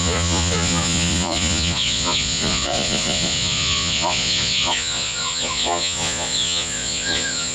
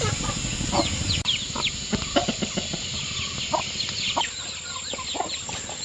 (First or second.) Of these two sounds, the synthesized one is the first